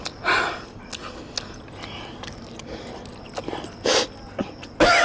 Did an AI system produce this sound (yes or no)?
no